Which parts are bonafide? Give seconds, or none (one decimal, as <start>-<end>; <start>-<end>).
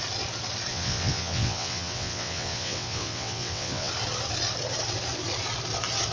0.0-0.7; 3.9-6.1